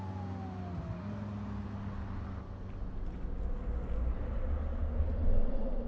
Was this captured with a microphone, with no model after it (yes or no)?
yes